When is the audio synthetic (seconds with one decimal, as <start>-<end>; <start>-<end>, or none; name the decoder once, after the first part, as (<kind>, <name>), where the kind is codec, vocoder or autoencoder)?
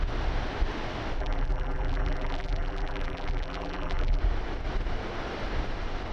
1.2-4.2 (vocoder, BigVGAN v2)